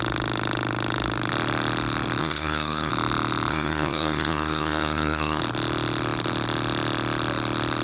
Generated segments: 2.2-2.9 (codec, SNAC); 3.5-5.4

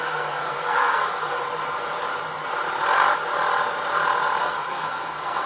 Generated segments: 0.0-1.4 (codec, SNAC); 4.4-5.5

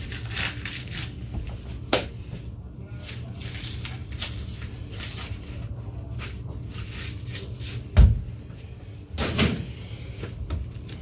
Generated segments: 0.8-1.4 (codec, SNAC)

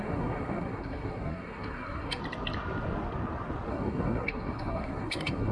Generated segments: 0.0-2.2 (codec, SNAC); 3.7-5.5

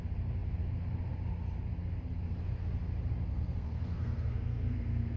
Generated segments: 3.3-5.2 (codec, SNAC)